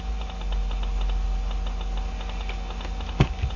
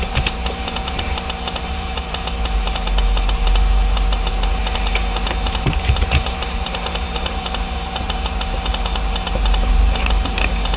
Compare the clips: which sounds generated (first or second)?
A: second